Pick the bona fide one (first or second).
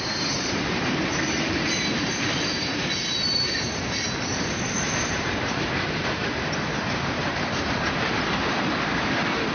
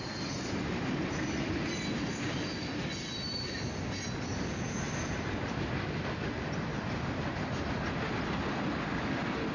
second